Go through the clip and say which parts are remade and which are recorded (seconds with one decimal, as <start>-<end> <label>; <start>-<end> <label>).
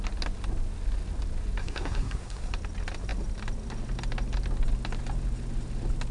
0.0-1.6 recorded; 1.6-2.5 remade; 2.5-6.1 recorded